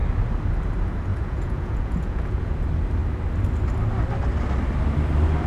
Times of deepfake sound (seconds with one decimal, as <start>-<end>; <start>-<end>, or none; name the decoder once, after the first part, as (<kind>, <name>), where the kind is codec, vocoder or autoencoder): 1.1-2.5 (vocoder, Vocos)